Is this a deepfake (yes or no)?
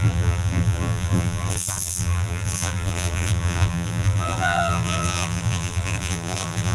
yes